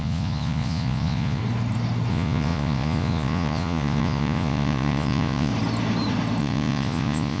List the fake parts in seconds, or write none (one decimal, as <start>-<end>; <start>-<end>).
0.0-1.4; 2.1-5.5; 6.4-7.4